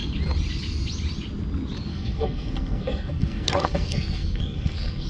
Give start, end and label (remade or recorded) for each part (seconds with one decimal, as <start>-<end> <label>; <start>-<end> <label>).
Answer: 0.0-1.9 recorded; 1.9-5.1 remade